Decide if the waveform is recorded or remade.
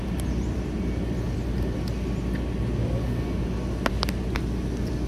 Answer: recorded